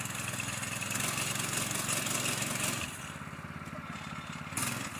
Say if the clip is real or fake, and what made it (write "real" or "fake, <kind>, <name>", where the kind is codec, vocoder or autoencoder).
real